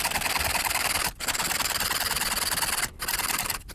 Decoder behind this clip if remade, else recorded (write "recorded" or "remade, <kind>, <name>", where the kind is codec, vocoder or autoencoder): recorded